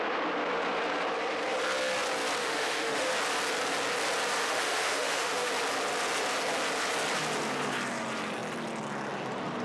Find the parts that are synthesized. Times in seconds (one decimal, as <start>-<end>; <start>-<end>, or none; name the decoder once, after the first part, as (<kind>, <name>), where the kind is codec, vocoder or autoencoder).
2.4-3.1 (autoencoder, DAC-VAE); 4.4-5.5